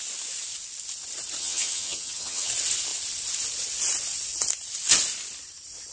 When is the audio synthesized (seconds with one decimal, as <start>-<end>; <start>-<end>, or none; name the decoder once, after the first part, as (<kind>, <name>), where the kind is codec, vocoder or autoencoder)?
1.4-2.5 (vocoder, HiFi-GAN)